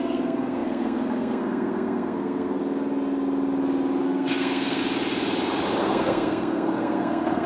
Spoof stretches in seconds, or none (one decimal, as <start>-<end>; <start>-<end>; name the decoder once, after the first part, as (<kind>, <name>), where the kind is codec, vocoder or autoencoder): 0.0-2.6 (codec, SNAC); 4.0-4.8; 5.8-7.5